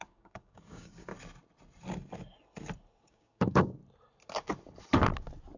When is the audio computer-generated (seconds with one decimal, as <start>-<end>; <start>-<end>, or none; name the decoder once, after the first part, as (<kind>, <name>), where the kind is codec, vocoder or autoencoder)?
0.0-1.1 (codec, DAC); 3.0-3.8